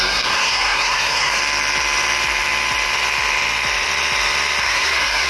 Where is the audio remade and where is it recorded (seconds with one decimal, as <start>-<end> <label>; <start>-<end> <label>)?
0.0-1.4 remade; 1.4-4.6 recorded; 4.6-5.3 remade